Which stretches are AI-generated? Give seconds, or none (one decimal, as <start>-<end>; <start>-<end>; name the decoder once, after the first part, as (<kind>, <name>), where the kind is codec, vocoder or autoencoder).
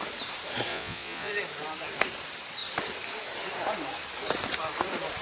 0.7-1.3 (vocoder, Vocos)